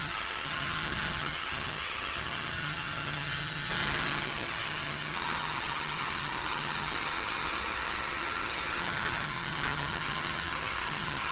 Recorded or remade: remade